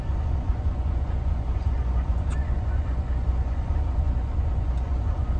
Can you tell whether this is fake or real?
fake